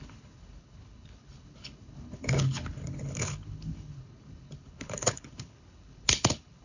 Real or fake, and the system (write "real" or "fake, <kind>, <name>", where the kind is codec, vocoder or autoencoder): fake, codec, HILCodec